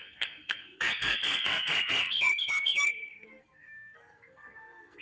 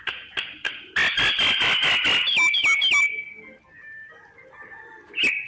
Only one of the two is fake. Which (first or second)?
first